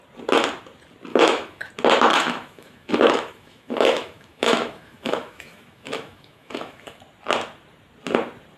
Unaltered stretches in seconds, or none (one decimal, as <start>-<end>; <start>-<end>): 0.0-1.1; 1.7-2.1; 7.0-8.6